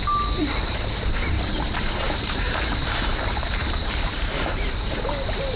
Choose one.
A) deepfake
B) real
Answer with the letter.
A